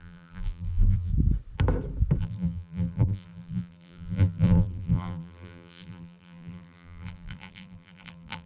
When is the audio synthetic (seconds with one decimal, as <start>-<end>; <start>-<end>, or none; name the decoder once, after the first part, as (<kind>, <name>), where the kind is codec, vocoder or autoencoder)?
0.0-1.1 (vocoder, BigVGAN v2); 2.2-8.5